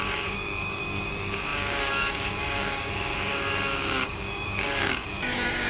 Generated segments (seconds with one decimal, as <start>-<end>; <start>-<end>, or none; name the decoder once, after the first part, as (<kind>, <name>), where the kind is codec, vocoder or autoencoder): 0.0-5.7 (codec, DAC)